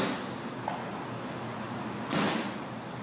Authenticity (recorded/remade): recorded